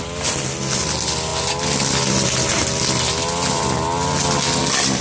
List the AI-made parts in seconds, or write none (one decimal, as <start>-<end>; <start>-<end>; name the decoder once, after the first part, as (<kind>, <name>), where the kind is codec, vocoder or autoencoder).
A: none